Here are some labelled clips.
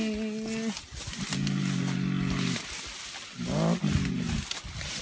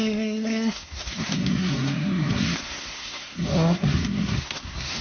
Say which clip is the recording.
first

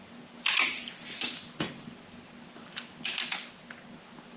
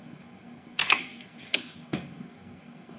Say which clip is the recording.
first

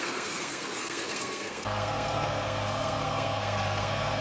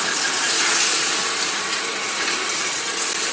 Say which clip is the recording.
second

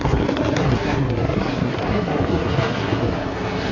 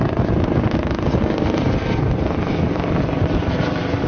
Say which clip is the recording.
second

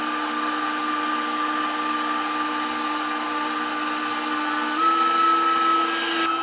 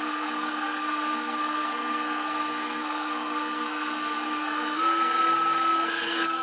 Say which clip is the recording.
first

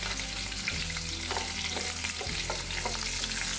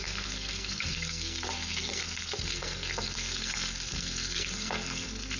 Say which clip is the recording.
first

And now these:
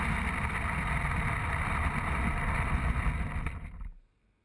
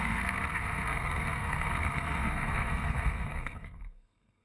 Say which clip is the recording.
first